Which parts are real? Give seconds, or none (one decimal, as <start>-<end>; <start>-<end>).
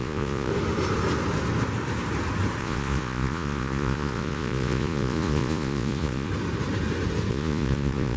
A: 0.5-2.6; 6.3-7.3